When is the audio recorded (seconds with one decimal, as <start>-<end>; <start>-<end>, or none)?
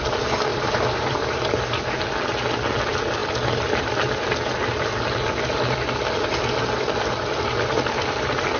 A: 0.0-0.5; 1.8-8.6